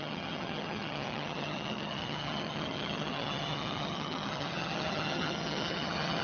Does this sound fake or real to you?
fake